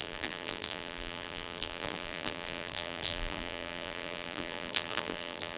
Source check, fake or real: fake